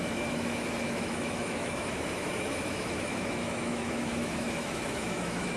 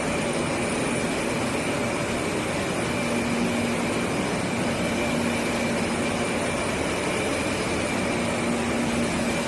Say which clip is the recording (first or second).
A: second